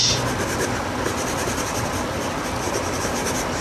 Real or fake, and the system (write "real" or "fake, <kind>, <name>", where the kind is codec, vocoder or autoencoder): real